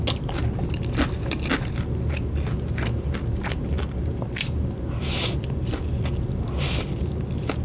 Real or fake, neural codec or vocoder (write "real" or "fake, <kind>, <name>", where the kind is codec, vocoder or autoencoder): real